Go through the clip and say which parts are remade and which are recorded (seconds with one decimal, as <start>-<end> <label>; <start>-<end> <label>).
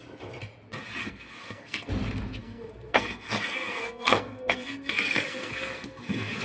0.0-1.0 recorded; 1.0-1.9 remade; 1.9-2.4 recorded; 2.4-6.4 remade